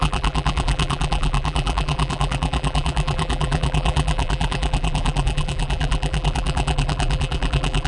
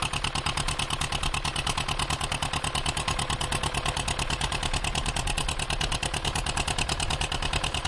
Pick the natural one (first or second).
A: second